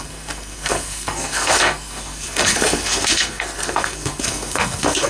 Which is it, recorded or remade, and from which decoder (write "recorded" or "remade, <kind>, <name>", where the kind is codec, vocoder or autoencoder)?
remade, codec, SNAC